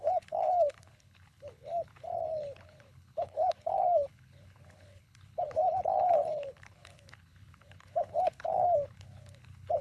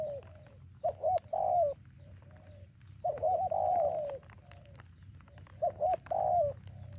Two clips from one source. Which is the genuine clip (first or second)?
second